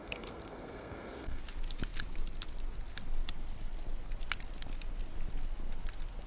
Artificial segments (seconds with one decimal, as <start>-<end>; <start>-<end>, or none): 0.0-1.4